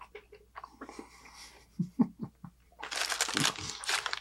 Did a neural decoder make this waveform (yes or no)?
no